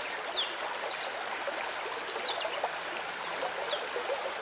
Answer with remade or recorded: recorded